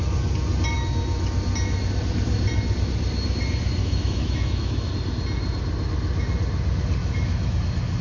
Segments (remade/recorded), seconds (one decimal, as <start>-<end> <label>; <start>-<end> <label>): 0.0-3.8 recorded; 3.8-4.9 remade; 4.9-7.0 recorded; 7.0-7.6 remade; 7.6-8.0 recorded